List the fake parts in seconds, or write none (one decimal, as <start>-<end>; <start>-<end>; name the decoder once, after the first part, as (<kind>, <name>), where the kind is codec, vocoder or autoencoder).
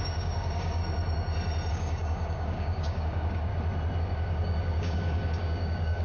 0.0-0.8 (codec, DAC); 1.7-3.5; 4.0-6.0